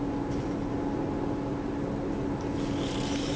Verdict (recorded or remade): recorded